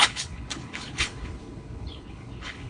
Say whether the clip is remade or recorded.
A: remade